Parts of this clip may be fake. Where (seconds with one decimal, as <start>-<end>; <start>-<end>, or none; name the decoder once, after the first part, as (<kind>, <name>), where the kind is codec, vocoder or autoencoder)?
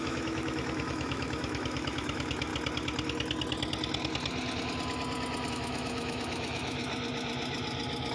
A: 0.0-2.5 (autoencoder, DAC-VAE); 5.5-6.8